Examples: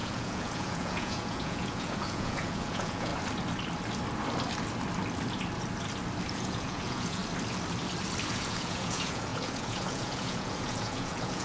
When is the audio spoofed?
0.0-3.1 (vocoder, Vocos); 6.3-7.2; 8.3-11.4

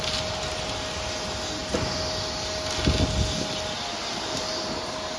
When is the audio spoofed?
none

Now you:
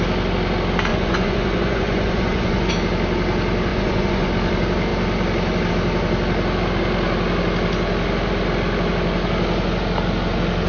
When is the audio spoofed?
0.9-2.7 (vocoder, Vocos); 3.7-4.3

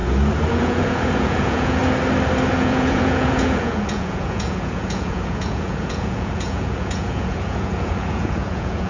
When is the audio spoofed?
0.5-1.8 (vocoder, Vocos); 2.5-8.9

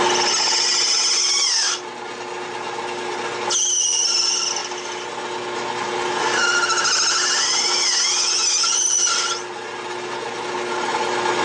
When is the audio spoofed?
none